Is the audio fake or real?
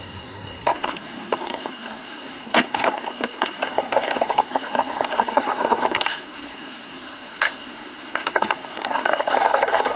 fake